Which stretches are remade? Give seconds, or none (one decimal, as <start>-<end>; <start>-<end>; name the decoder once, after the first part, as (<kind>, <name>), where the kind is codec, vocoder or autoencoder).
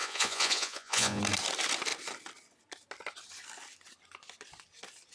0.0-1.2 (vocoder, Vocos)